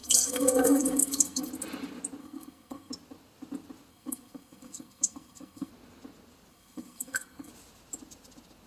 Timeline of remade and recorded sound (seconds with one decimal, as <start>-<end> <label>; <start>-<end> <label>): 0.0-1.5 remade; 1.5-2.2 recorded; 2.2-2.9 remade; 2.9-3.9 recorded; 3.9-5.7 remade; 5.7-6.5 recorded; 6.5-7.5 remade; 7.5-8.7 recorded